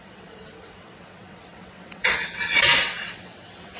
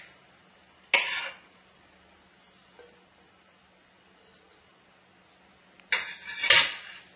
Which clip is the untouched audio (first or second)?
second